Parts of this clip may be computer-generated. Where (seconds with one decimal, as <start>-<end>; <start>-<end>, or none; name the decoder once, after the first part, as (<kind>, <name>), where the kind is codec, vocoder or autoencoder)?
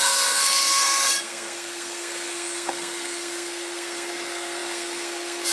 0.0-5.5 (codec, SNAC)